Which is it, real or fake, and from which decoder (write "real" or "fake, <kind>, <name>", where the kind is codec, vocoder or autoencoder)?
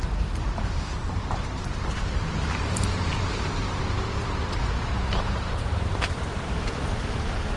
fake, vocoder, BigVGAN v2